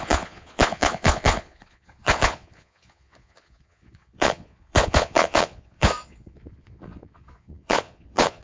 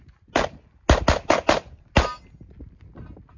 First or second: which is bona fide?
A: second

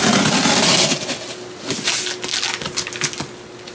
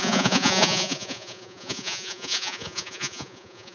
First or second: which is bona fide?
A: first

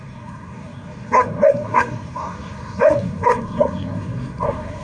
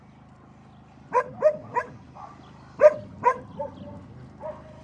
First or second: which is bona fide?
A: second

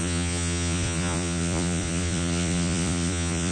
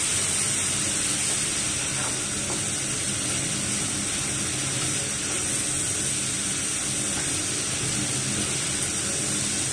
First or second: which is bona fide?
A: second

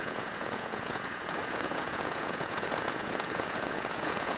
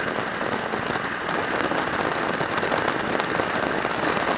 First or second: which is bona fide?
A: second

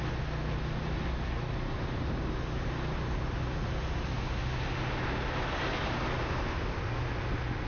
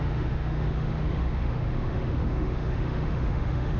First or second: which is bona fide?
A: first